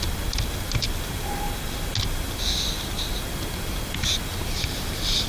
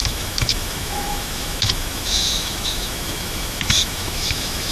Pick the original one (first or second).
first